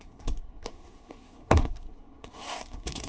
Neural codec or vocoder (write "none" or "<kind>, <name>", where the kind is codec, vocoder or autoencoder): codec, SNAC